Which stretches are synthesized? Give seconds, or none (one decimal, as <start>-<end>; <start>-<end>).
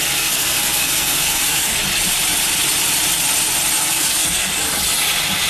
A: 0.0-1.8; 3.8-4.5